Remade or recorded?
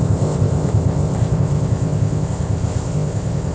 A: remade